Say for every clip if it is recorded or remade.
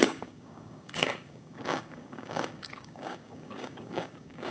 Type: remade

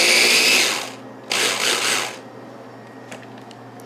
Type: recorded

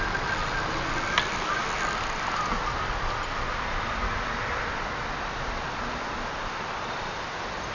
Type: recorded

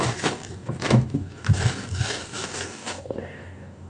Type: remade